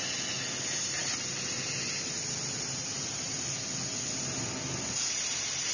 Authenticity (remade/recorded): recorded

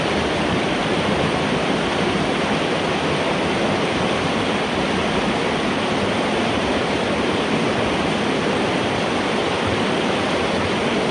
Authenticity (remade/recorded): recorded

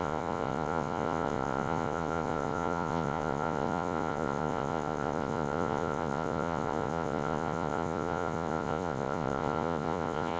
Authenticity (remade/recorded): remade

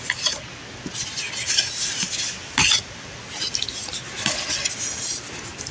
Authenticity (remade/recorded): recorded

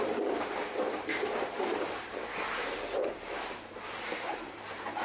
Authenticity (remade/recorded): remade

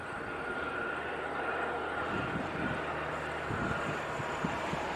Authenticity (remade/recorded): recorded